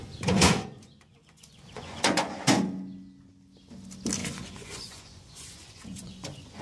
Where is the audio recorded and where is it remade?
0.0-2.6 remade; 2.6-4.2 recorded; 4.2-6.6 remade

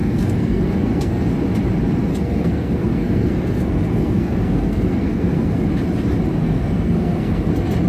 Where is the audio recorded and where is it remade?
0.0-1.3 remade; 1.3-2.1 recorded; 2.1-5.7 remade; 5.7-6.4 recorded; 6.4-7.5 remade; 7.5-7.9 recorded

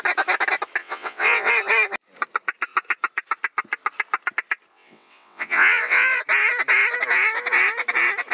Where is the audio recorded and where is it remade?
0.0-0.8 recorded; 0.8-1.5 remade; 1.5-4.7 recorded; 4.7-6.2 remade; 6.2-8.3 recorded